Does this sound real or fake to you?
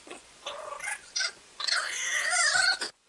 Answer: fake